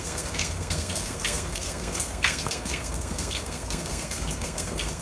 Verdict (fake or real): fake